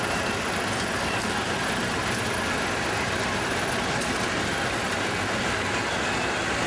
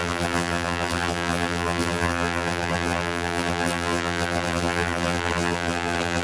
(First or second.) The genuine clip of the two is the first